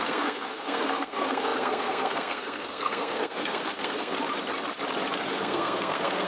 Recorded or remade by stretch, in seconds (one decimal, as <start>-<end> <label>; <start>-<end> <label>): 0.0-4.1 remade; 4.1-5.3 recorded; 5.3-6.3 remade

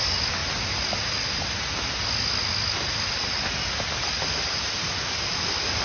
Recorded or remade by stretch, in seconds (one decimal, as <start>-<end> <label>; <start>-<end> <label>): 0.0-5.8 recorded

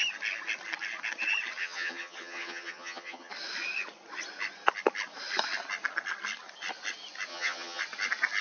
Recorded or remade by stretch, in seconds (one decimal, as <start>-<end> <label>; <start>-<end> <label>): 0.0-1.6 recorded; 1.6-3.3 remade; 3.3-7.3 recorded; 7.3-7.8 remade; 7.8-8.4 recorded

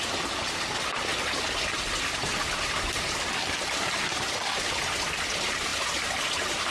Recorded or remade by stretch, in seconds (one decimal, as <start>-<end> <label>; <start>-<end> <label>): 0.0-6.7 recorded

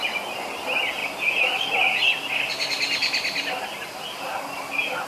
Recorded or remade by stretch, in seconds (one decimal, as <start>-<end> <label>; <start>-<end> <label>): 0.0-5.1 recorded

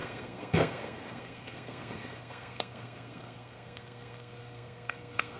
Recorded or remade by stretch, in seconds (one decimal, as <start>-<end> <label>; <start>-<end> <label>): 0.0-5.4 remade

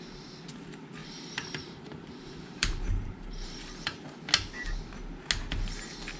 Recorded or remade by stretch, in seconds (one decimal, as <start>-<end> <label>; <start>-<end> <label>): 0.0-1.0 recorded; 1.0-4.2 remade; 4.2-6.2 recorded

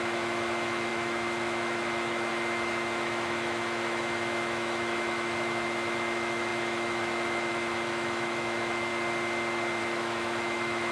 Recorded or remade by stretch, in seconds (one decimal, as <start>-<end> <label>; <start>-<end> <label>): 0.0-8.9 remade; 8.9-9.8 recorded; 9.8-10.9 remade